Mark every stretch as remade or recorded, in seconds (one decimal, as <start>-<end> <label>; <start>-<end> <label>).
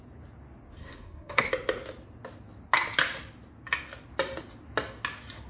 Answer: 0.0-0.8 recorded; 0.8-1.5 remade; 1.5-5.5 recorded